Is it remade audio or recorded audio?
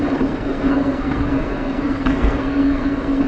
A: remade